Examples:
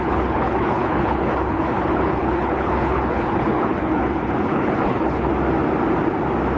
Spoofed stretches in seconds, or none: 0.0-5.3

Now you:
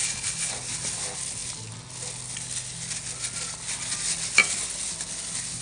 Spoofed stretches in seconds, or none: 0.0-0.5